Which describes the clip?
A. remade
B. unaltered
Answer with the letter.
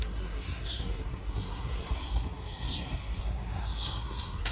A